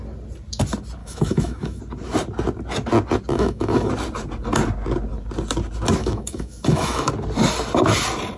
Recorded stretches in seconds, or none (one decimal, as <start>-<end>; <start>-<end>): 0.0-1.0; 1.8-3.3; 3.9-6.0; 7.1-8.4